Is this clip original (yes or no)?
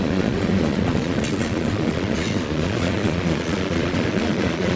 no